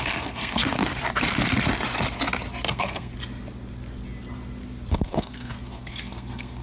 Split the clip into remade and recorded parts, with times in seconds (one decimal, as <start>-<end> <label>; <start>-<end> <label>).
0.0-0.6 remade; 0.6-2.7 recorded; 2.7-3.1 remade; 3.1-4.9 recorded; 4.9-6.6 remade